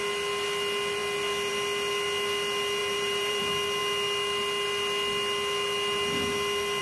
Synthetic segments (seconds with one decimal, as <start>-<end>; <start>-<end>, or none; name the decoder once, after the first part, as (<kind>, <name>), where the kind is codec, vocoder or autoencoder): 2.8-3.4 (vocoder, BigVGAN v2)